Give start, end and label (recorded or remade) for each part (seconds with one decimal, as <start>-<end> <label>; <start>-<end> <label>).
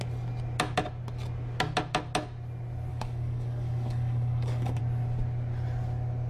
0.0-2.9 recorded; 2.9-4.8 remade; 4.8-6.3 recorded